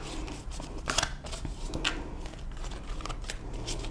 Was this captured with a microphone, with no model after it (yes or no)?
yes